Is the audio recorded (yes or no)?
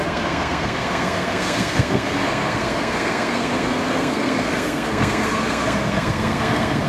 no